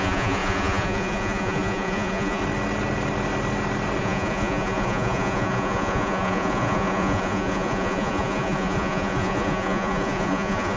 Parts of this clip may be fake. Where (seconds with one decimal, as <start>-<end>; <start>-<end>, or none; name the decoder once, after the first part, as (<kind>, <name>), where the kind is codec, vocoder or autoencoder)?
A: 0.0-2.4 (vocoder, Vocos); 4.0-10.8